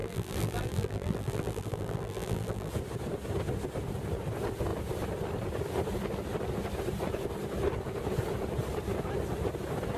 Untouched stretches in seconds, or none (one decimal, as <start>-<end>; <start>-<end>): 2.7-10.0